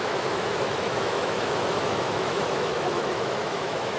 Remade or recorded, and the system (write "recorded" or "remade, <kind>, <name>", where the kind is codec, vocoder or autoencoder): remade, autoencoder, DAC-VAE